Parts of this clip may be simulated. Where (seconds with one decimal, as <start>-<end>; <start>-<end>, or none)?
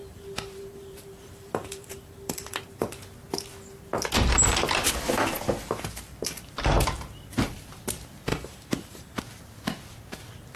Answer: 0.0-2.6; 8.3-9.2